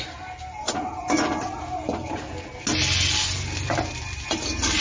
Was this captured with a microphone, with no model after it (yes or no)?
yes